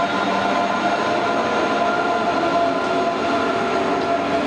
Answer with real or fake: real